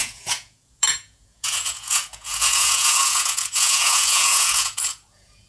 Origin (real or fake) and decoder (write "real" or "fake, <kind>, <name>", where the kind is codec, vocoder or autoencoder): fake, vocoder, Vocos